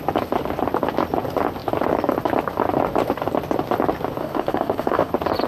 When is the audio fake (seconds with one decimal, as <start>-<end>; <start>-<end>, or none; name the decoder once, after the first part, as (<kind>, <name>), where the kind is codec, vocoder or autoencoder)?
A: 4.2-5.1 (autoencoder, DAC-VAE)